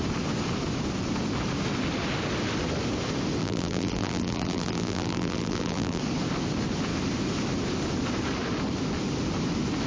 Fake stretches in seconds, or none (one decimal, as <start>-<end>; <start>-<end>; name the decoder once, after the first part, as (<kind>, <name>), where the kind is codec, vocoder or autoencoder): 3.4-6.0 (vocoder, BigVGAN v2)